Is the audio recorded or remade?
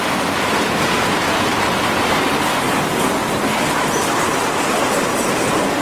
recorded